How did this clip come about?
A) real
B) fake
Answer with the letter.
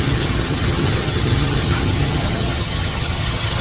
B